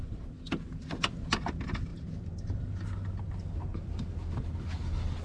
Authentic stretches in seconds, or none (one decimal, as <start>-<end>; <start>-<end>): 0.0-5.2